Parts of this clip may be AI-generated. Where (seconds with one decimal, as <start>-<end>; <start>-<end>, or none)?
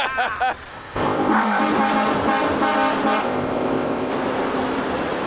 0.7-1.6; 3.2-4.1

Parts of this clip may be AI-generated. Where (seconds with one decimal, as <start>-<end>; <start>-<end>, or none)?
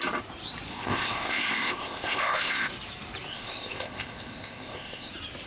0.7-2.7; 3.3-5.1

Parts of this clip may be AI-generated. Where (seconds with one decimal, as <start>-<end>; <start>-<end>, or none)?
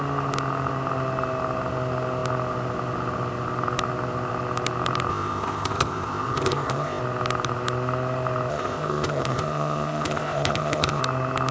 5.1-7.0; 8.5-11.0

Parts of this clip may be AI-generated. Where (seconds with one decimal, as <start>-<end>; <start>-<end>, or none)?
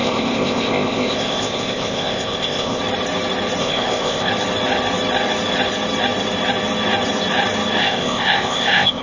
0.0-2.8; 3.6-4.3; 7.8-9.0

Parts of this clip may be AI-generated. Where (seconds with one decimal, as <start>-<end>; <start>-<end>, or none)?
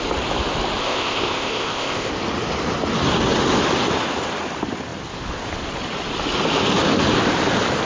0.8-2.1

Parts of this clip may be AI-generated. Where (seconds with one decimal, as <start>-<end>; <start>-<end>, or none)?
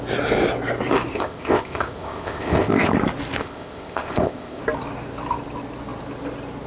1.1-2.9; 3.4-4.6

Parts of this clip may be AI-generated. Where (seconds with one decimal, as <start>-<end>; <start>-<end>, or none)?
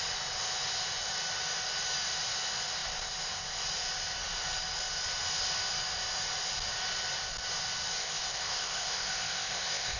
8.0-10.0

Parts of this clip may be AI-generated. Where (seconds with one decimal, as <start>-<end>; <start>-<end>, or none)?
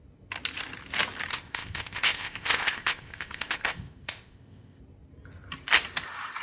1.3-4.8